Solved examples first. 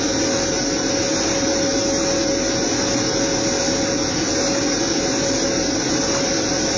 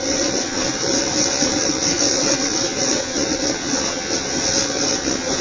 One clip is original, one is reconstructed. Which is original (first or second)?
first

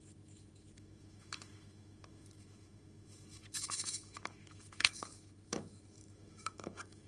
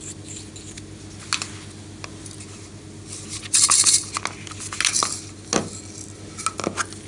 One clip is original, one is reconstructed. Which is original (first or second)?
second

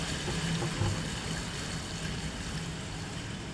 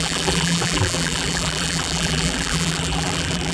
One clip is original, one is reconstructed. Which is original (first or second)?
first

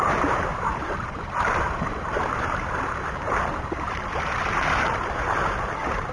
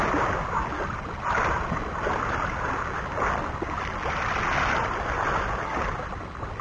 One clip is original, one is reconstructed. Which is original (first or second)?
second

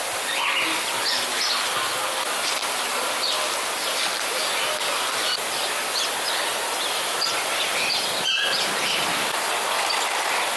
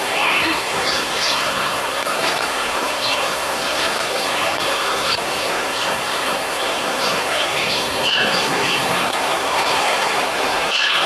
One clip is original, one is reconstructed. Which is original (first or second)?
first